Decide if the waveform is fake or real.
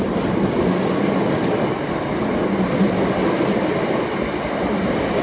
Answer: real